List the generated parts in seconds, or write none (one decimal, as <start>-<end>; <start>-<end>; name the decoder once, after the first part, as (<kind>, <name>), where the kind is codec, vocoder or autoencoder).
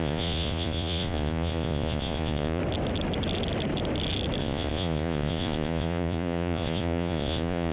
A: 0.0-2.6 (vocoder, Vocos); 4.4-7.7